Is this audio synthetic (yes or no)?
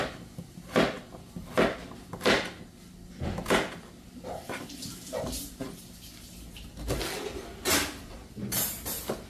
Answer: no